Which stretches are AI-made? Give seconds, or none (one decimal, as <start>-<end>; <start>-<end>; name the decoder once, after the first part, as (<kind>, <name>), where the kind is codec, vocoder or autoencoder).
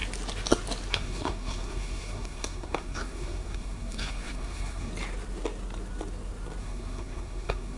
0.9-4.9 (codec, SNAC); 6.6-7.8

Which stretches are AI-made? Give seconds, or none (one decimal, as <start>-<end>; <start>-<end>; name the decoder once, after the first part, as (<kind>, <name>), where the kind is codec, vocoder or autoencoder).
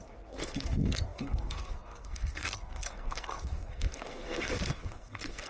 0.0-5.5 (codec, SNAC)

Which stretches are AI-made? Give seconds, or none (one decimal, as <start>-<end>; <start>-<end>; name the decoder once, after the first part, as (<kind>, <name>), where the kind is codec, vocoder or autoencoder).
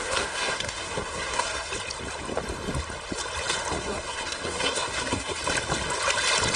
0.0-1.7 (codec, SNAC); 3.8-5.4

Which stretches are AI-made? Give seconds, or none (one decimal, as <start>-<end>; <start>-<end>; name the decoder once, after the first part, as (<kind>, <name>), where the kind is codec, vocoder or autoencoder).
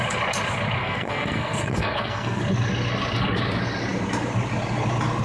0.8-2.4 (codec, SNAC)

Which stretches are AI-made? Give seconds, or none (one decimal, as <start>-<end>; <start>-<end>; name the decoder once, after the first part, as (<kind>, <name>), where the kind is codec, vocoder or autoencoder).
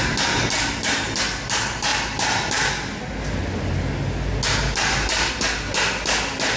none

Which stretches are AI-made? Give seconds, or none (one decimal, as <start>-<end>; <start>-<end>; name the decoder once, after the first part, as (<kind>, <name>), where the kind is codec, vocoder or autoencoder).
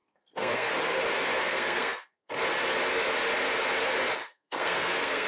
0.0-0.7 (codec, SNAC); 1.5-2.3; 4.2-5.3